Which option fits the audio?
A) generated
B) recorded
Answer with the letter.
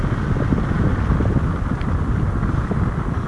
B